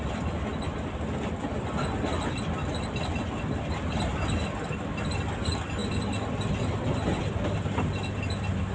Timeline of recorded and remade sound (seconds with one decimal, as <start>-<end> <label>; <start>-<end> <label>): 0.0-8.7 recorded